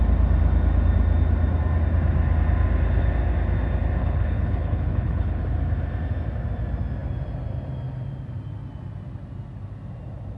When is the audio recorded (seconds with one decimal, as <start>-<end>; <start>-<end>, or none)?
0.0-4.0; 5.4-10.4

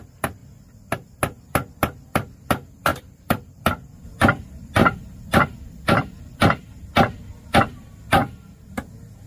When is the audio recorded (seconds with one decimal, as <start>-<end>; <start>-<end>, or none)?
0.0-2.9; 3.6-4.8; 6.6-8.2; 8.7-9.3